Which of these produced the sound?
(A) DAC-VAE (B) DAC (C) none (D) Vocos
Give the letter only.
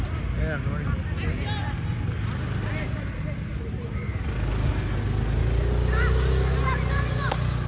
C